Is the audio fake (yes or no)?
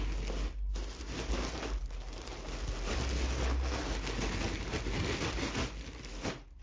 no